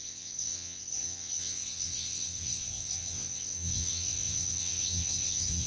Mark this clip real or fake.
fake